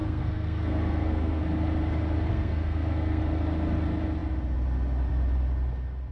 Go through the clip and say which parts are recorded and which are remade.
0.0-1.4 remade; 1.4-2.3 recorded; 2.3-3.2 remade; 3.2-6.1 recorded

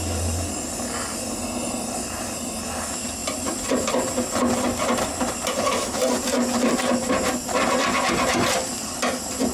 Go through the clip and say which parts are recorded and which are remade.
0.0-0.6 remade; 0.6-3.2 recorded; 3.2-7.1 remade; 7.1-9.5 recorded

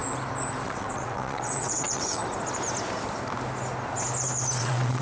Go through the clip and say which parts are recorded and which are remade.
0.0-0.6 recorded; 0.6-2.2 remade; 2.2-4.6 recorded; 4.6-5.0 remade

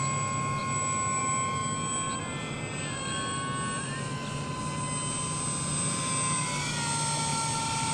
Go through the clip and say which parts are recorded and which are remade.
0.0-7.9 recorded